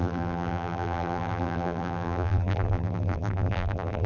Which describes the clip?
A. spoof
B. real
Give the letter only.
A